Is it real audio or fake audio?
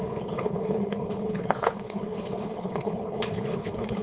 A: fake